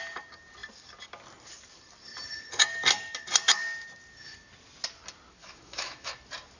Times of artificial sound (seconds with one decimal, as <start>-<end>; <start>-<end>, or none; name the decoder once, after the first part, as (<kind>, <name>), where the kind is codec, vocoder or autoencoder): 5.4-6.1 (autoencoder, DAC-VAE)